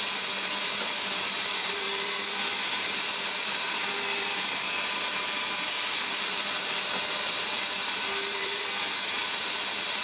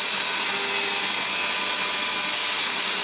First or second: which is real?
second